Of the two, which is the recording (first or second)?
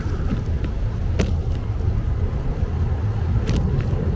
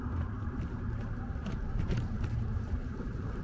first